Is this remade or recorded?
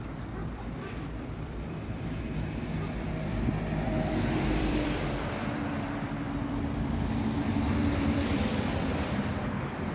remade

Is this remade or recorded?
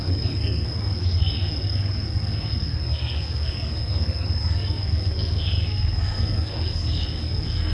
remade